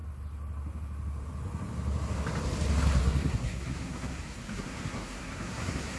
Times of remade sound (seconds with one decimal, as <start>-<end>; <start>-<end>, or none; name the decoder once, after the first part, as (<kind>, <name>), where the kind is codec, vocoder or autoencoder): 3.0-6.0 (codec, SNAC)

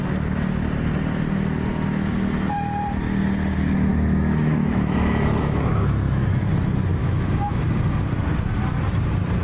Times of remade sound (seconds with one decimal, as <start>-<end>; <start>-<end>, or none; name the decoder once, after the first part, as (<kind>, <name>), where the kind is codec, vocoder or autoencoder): 3.9-6.4 (autoencoder, DAC-VAE); 6.9-7.6

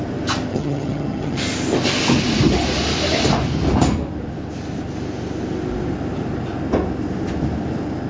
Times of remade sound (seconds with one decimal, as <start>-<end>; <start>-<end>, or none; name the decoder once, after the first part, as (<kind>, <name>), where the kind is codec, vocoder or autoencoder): 0.5-1.4 (vocoder, HiFi-GAN)

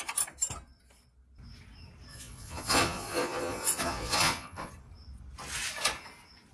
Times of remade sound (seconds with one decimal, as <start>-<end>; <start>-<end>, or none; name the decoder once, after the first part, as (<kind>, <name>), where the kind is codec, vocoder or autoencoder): 2.1-4.7 (vocoder, Vocos)

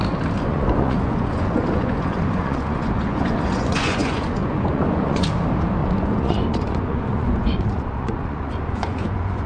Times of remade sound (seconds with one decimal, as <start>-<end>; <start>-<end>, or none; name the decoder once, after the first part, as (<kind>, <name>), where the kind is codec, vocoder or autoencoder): 0.5-5.3 (vocoder, Vocos); 5.8-9.5

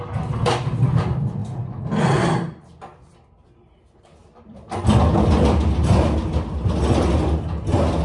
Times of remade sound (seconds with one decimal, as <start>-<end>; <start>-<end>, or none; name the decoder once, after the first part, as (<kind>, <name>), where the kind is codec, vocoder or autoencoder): 4.2-4.9 (vocoder, BigVGAN v2)

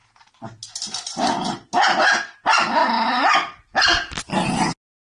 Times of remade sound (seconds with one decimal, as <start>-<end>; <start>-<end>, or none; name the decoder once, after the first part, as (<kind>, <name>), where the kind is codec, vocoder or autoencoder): none

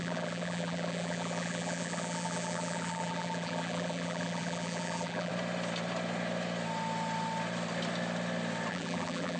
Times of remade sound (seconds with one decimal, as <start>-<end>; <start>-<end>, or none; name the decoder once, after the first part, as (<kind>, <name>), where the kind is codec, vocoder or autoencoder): 0.0-5.3 (vocoder, BigVGAN v2); 8.7-9.4